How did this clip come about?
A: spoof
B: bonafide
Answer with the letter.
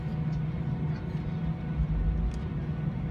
B